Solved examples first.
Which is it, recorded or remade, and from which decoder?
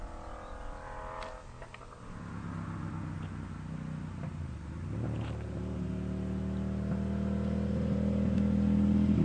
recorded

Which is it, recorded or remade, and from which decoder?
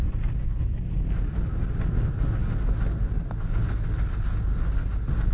recorded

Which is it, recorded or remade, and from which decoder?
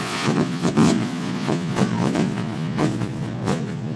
remade, vocoder, Vocos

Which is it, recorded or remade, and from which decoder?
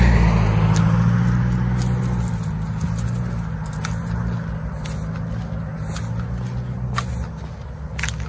recorded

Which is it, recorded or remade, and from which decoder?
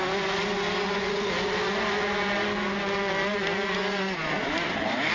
recorded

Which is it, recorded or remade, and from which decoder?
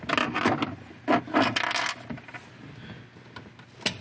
recorded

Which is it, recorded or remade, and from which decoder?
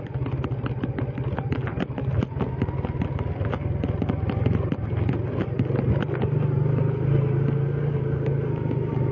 recorded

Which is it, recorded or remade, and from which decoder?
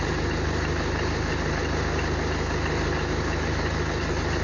recorded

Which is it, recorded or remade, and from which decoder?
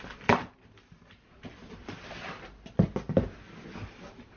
recorded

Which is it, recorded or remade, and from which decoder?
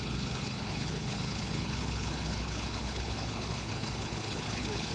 remade, codec, HILCodec